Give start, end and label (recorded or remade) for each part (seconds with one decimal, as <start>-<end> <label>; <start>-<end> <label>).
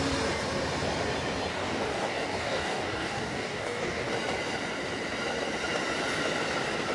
0.0-1.5 recorded; 1.5-4.1 remade; 4.1-6.9 recorded